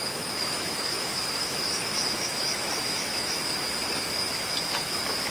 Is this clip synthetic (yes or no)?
yes